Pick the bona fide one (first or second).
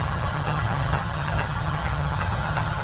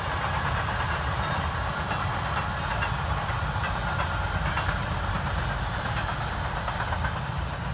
second